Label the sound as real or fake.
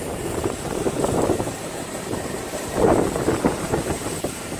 real